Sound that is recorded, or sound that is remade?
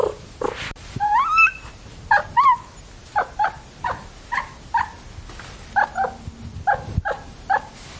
recorded